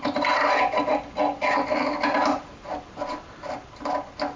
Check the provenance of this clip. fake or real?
real